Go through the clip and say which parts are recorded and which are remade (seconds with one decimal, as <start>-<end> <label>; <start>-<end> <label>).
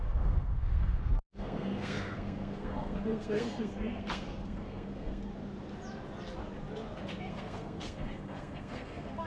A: 0.0-5.3 remade; 5.3-7.2 recorded; 7.2-9.3 remade